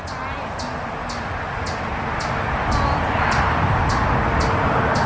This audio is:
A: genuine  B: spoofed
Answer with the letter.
A